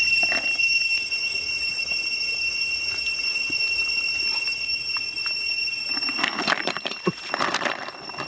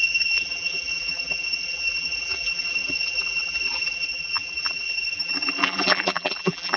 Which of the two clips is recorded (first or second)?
first